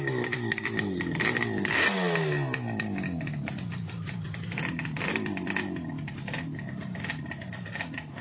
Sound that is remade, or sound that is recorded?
recorded